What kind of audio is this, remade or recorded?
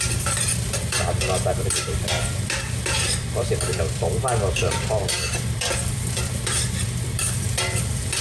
remade